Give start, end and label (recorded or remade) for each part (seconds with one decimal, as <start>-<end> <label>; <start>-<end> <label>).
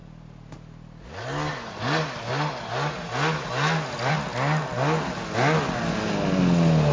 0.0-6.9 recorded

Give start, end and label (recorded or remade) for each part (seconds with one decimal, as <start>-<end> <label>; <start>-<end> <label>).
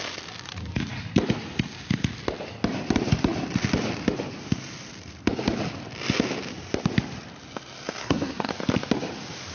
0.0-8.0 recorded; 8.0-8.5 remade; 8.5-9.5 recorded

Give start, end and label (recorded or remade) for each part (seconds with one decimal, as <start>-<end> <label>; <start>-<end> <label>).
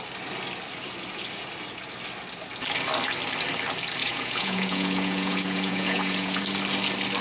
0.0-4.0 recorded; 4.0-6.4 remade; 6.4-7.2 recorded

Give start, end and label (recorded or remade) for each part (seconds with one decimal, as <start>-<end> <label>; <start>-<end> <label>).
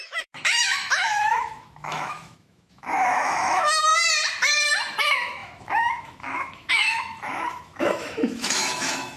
0.0-3.9 remade; 3.9-5.0 recorded; 5.0-9.2 remade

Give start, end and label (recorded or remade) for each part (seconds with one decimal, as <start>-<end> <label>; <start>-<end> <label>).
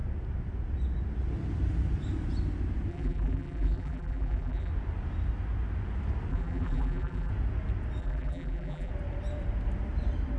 0.0-2.9 recorded; 2.9-4.7 remade; 4.7-6.3 recorded; 6.3-7.3 remade; 7.3-8.0 recorded; 8.0-8.9 remade; 8.9-10.4 recorded